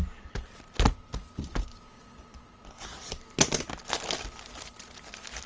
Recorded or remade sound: recorded